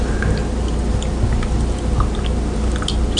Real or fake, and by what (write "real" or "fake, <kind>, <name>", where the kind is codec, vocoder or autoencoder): real